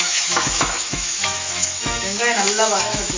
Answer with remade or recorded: remade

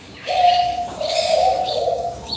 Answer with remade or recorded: remade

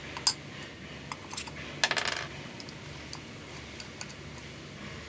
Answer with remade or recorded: recorded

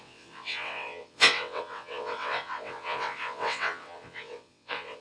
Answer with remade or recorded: remade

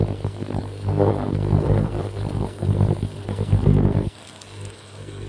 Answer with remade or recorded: remade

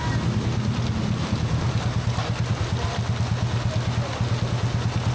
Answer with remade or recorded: recorded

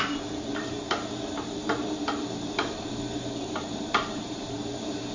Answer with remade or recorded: remade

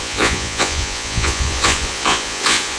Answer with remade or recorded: remade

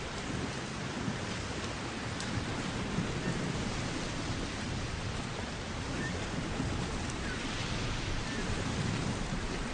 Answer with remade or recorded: recorded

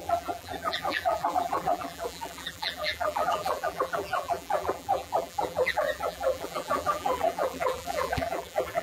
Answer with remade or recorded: remade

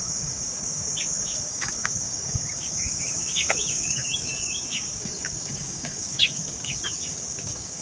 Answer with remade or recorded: remade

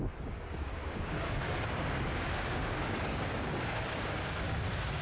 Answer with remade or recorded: remade